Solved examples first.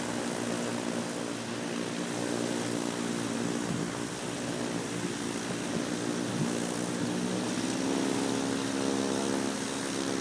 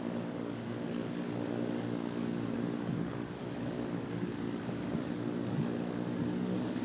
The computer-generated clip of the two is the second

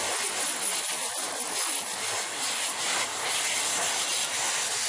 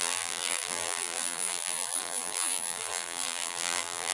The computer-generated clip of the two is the second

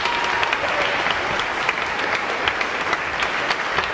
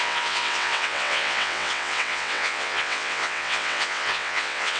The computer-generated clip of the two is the second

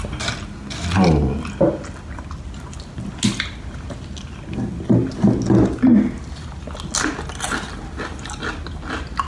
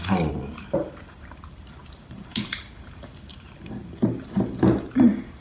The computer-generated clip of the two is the second